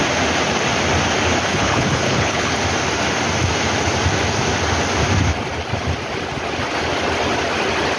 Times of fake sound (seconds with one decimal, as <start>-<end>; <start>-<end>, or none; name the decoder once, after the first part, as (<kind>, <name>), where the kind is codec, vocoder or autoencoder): 1.5-2.5 (codec, HILCodec)